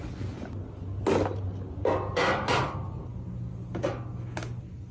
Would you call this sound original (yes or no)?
yes